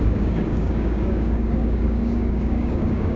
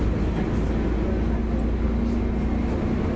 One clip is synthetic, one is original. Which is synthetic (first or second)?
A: first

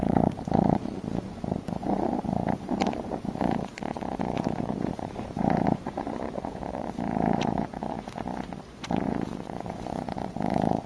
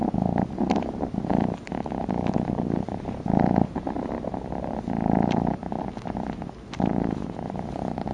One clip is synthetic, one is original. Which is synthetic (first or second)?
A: first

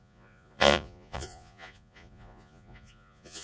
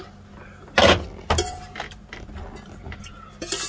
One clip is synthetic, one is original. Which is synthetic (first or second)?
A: first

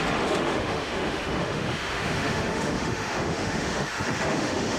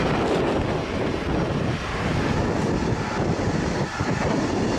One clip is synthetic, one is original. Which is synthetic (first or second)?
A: first